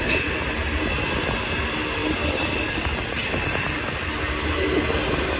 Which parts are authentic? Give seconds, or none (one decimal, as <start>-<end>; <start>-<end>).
0.0-5.4

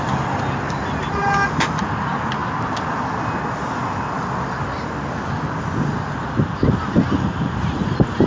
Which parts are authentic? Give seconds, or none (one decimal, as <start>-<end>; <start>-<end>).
1.2-1.8; 2.4-5.6

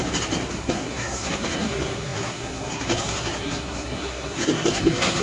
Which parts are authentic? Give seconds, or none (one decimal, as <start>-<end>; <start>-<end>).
0.0-0.5

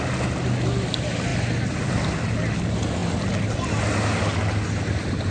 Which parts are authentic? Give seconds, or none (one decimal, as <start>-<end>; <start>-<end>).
0.0-5.3

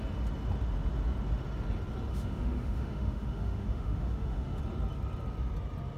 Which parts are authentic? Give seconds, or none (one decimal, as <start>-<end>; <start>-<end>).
0.0-2.1; 4.6-6.0

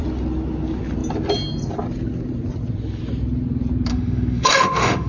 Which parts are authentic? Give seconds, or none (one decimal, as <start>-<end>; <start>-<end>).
0.0-3.9